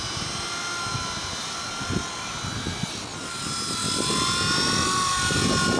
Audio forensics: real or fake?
real